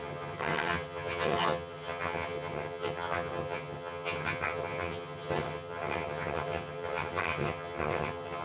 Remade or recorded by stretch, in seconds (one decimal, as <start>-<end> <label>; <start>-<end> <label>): 0.0-8.4 remade